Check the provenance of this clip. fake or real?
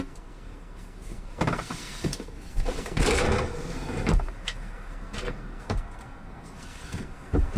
fake